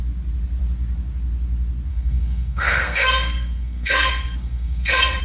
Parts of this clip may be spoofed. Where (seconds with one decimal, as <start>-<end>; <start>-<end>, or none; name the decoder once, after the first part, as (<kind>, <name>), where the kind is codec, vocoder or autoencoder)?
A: 1.9-5.2 (codec, SNAC)